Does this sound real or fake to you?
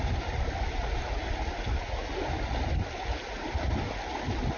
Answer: real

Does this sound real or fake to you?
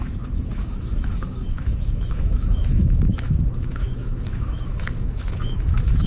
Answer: fake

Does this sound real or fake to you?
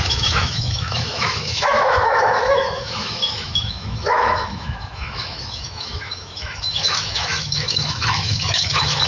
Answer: fake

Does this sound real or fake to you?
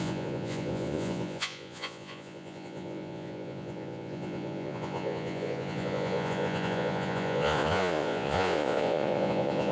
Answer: fake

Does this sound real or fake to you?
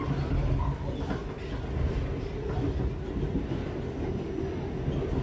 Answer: real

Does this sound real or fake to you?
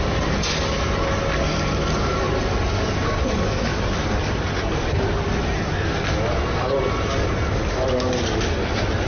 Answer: real